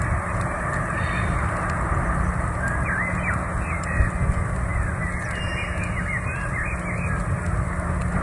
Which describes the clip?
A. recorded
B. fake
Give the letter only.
A